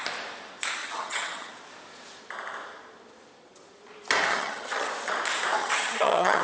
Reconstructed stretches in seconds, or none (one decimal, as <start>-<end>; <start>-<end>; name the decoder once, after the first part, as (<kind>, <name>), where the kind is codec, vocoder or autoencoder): 0.8-1.5 (vocoder, HiFi-GAN); 4.3-4.9; 5.6-6.4